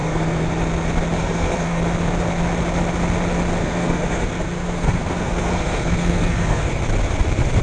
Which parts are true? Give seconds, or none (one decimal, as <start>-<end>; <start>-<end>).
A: 0.6-1.2; 1.8-3.6; 6.8-7.6